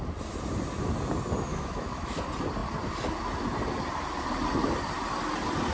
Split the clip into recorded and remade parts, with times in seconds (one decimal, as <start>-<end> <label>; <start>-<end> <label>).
0.0-1.5 recorded; 1.5-2.2 remade; 2.2-5.7 recorded